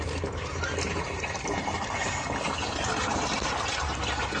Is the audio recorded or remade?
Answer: recorded